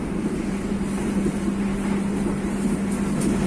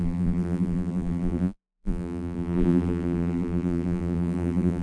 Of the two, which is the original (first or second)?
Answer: first